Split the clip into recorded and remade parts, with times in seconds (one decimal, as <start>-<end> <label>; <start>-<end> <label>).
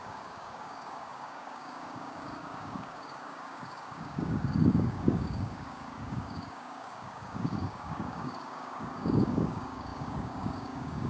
0.0-11.1 remade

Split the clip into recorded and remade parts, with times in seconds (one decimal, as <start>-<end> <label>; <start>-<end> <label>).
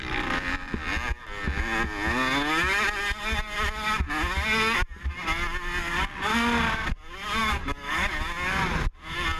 0.0-7.4 recorded; 7.4-8.2 remade; 8.2-9.4 recorded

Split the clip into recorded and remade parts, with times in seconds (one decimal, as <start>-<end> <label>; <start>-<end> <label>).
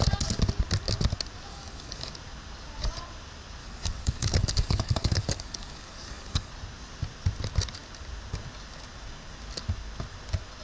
0.0-1.5 recorded; 1.5-2.1 remade; 2.1-3.6 recorded; 3.6-6.5 remade; 6.5-10.6 recorded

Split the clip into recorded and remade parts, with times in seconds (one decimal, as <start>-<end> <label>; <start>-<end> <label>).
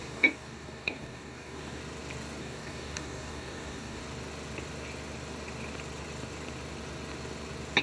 0.0-1.8 remade; 1.8-2.4 recorded; 2.4-4.0 remade; 4.0-7.8 recorded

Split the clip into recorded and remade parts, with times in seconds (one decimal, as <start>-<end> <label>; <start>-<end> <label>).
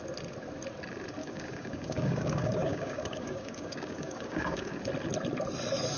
0.0-1.2 recorded; 1.2-4.8 remade; 4.8-6.0 recorded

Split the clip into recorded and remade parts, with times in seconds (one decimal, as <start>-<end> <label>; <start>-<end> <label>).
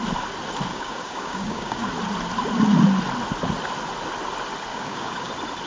0.0-0.7 recorded; 0.7-1.9 remade; 1.9-4.7 recorded; 4.7-5.3 remade; 5.3-5.7 recorded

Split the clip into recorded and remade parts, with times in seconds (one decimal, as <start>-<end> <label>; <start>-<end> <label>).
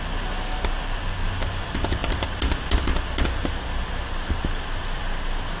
0.0-5.6 recorded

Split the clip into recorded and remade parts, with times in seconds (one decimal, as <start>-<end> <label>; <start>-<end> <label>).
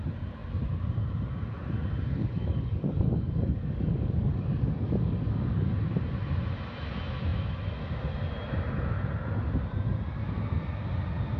0.0-2.2 recorded; 2.2-5.7 remade; 5.7-11.4 recorded